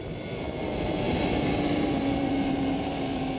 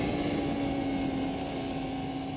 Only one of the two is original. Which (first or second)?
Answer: second